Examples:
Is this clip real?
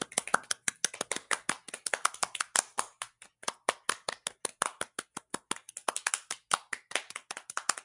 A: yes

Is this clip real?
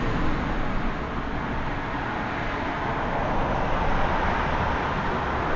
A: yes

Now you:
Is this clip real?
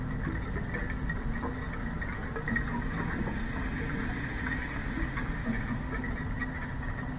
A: yes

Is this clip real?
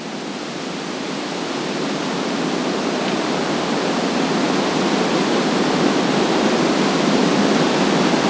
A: yes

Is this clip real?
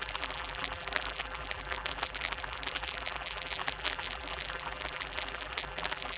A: no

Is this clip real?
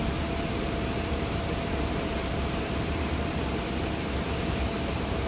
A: no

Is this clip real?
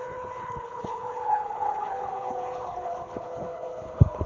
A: no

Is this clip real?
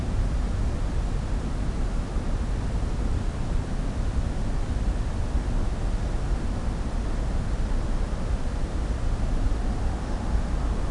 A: yes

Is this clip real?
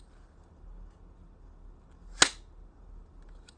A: yes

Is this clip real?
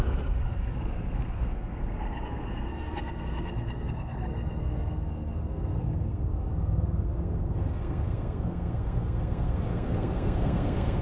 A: no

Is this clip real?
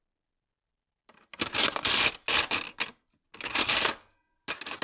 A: yes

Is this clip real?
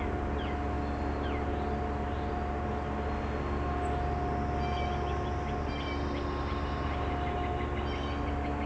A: yes